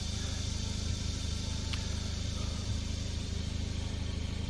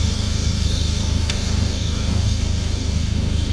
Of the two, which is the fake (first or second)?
second